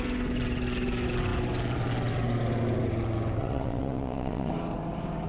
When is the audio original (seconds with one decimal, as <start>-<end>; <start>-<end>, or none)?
0.0-3.4; 4.5-5.3